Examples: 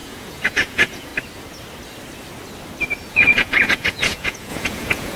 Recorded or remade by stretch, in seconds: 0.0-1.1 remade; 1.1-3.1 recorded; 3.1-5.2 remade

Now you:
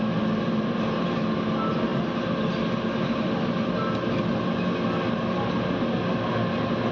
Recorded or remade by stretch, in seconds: 0.0-6.9 recorded

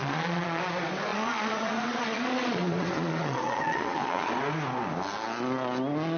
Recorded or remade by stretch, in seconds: 0.0-0.6 remade; 0.6-1.1 recorded; 1.1-4.3 remade; 4.3-6.2 recorded

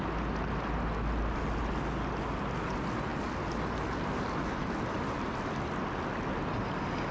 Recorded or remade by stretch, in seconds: 0.0-7.1 recorded

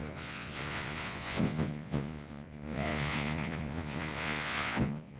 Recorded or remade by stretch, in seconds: 0.0-5.2 remade